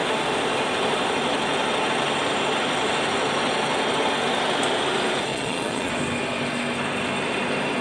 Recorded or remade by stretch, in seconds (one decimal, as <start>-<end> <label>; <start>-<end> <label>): 0.0-5.3 recorded; 5.3-5.9 remade; 5.9-7.8 recorded